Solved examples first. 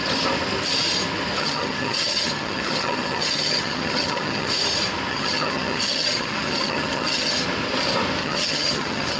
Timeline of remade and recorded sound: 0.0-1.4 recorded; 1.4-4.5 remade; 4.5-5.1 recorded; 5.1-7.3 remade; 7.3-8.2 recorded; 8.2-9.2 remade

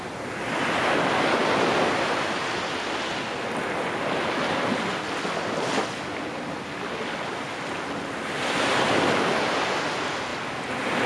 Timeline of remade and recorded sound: 0.0-11.1 recorded